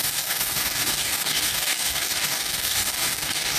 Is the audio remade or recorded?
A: remade